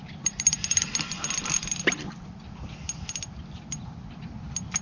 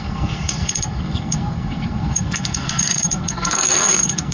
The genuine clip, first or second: first